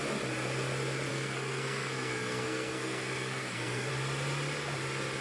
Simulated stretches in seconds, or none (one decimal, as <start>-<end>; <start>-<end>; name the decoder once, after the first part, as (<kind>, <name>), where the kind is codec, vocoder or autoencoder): 1.1-3.9 (codec, SNAC)